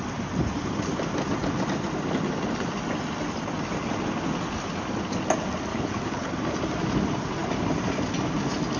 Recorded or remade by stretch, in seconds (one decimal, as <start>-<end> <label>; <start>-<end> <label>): 0.0-5.7 recorded; 5.7-6.3 remade; 6.3-8.8 recorded